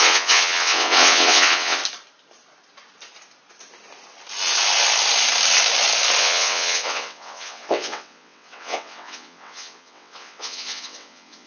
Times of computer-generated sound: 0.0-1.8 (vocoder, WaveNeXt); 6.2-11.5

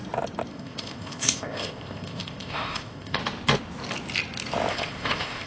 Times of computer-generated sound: 0.5-3.2 (codec, ZipCodec); 4.7-5.5

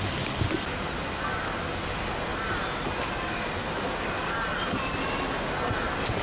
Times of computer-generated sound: none

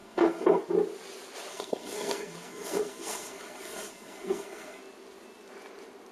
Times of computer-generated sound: 0.0-0.6 (codec, SNAC); 1.5-4.8

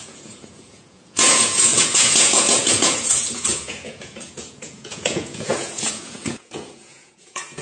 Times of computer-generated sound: 0.0-7.6 (vocoder, Vocos)

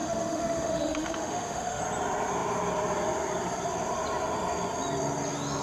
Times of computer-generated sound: 0.0-1.8 (autoencoder, DAC-VAE)